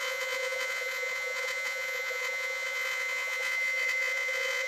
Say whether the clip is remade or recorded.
remade